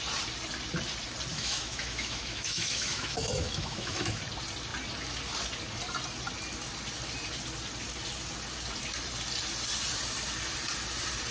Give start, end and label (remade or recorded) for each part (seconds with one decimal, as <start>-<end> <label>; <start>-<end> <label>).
0.0-1.3 recorded; 1.3-4.2 remade; 4.2-11.3 recorded